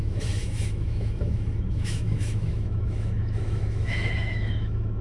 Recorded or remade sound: remade